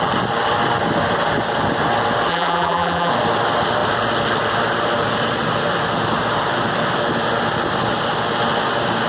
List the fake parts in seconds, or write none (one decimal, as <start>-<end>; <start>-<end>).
2.3-3.1